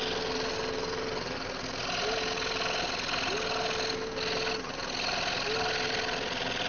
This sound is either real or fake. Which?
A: real